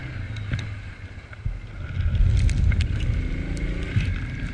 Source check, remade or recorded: recorded